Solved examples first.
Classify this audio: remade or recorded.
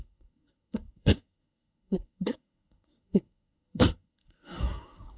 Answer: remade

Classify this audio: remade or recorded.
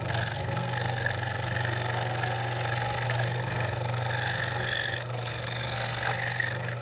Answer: remade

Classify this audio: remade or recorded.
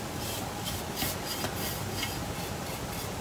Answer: recorded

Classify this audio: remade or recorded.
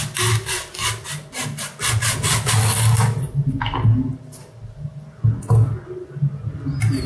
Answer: recorded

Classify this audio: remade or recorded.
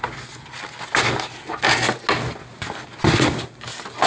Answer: recorded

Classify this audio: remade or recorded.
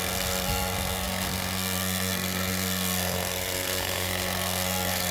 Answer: remade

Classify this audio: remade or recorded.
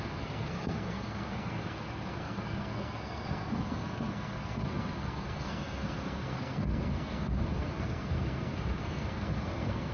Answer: remade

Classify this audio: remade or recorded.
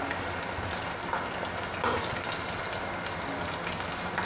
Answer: recorded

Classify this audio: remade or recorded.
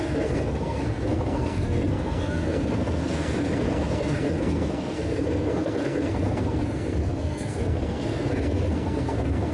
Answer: remade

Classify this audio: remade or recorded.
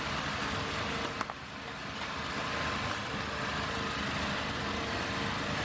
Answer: recorded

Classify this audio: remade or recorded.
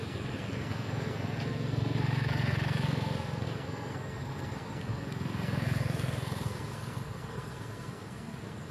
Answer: remade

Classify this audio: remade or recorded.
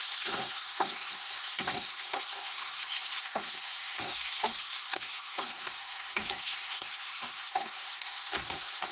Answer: remade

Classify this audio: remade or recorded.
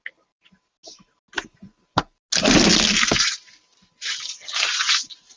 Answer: recorded